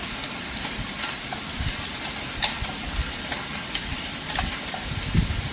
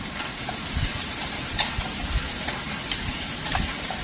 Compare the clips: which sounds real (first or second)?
first